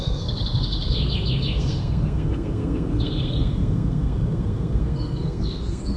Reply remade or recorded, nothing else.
remade